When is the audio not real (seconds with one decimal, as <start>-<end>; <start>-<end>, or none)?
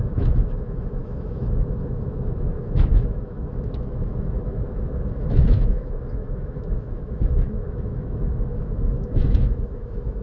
0.0-10.2